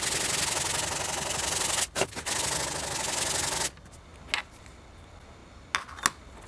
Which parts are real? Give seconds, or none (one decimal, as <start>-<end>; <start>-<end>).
0.0-6.5